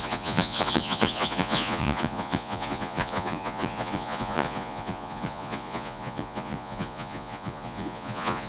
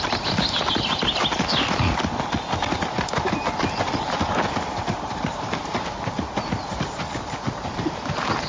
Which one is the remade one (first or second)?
first